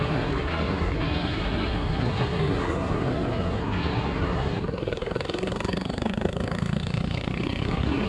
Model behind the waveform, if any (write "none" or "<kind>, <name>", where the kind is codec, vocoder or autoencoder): codec, SNAC